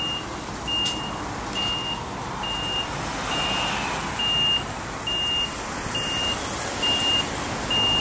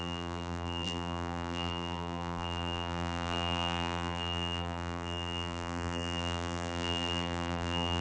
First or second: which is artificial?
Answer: second